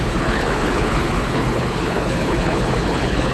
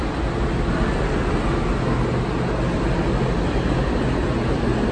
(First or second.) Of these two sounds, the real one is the second